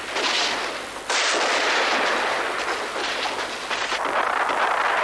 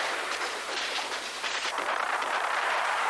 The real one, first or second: first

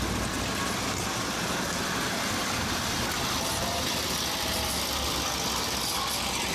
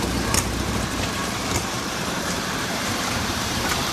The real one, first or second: first